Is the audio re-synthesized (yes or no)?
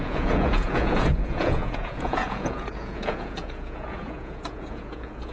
yes